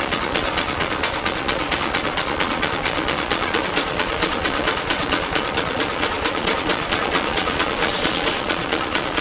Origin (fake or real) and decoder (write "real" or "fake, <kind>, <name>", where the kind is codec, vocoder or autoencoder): fake, vocoder, Vocos